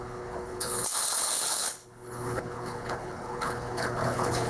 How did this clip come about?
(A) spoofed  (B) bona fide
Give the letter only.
A